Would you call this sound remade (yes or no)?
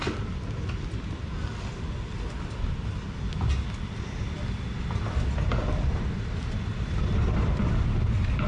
no